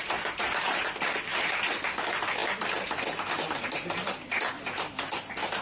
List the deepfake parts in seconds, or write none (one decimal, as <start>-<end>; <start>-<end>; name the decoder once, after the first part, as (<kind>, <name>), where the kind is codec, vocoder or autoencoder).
none